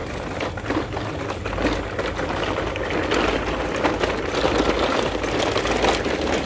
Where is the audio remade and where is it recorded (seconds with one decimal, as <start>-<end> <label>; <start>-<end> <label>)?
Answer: 0.0-6.5 recorded